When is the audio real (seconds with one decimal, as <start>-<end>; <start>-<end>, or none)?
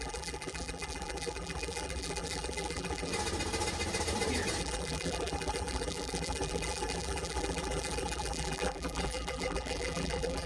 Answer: 3.1-4.6